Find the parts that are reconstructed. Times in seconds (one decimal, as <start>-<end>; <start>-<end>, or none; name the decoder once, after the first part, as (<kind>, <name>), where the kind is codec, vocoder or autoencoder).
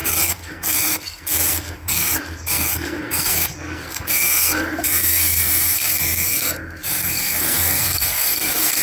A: 0.0-8.8 (codec, SNAC)